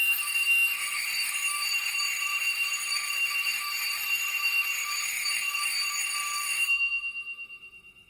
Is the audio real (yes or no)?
no